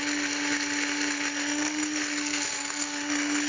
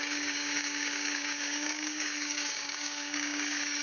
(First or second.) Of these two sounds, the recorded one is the first